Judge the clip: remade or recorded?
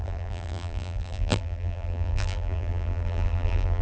remade